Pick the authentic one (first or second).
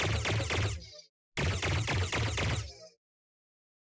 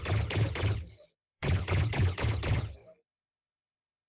first